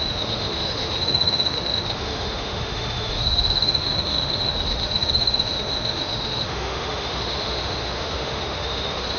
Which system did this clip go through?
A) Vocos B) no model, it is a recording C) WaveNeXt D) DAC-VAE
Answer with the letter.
D